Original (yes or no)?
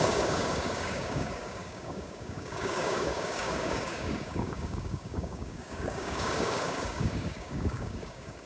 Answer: no